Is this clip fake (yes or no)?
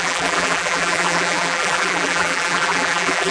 yes